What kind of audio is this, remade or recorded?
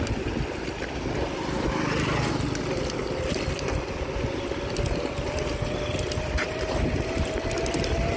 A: recorded